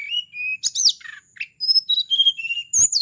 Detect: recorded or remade recorded